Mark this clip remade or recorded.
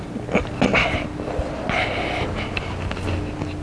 recorded